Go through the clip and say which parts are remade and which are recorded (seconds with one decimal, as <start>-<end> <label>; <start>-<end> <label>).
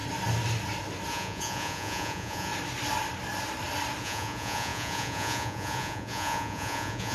0.0-1.1 recorded; 1.1-2.5 remade; 2.5-4.0 recorded; 4.0-7.1 remade